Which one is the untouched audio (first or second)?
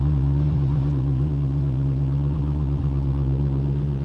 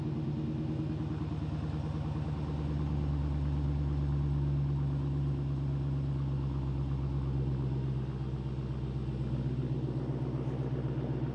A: second